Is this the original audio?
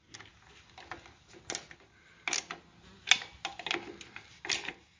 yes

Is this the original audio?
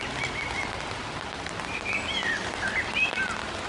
yes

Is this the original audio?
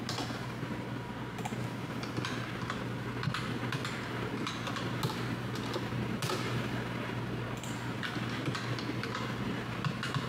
yes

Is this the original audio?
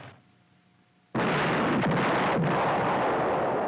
yes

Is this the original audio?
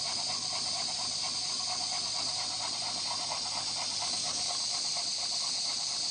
yes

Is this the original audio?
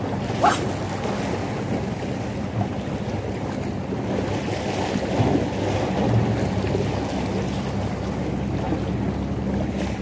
yes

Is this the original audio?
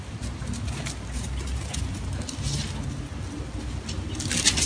yes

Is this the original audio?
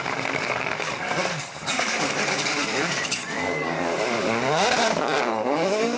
no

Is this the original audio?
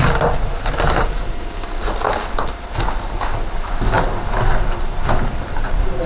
yes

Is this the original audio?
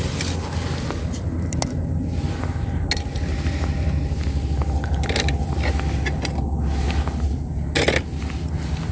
yes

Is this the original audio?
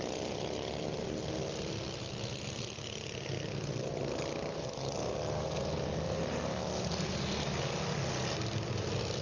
yes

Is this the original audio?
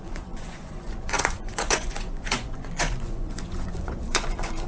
no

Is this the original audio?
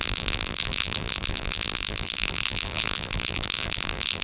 no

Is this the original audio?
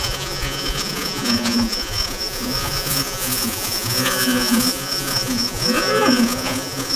no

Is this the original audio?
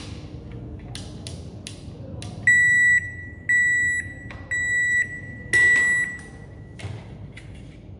yes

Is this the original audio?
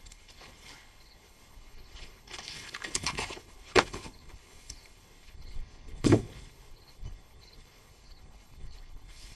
no